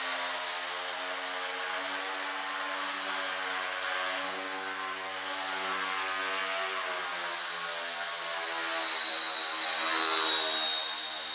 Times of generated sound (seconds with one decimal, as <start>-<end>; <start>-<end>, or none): none